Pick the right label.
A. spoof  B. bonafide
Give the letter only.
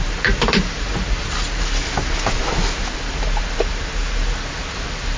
B